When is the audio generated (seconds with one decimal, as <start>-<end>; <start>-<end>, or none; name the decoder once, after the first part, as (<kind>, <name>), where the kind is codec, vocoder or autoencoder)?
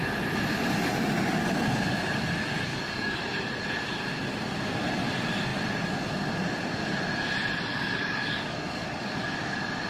2.7-3.2 (codec, DAC); 7.7-9.2